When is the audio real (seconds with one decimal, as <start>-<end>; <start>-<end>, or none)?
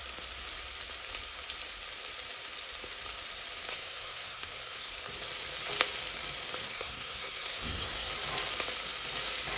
0.0-3.7; 4.9-6.6; 8.1-9.6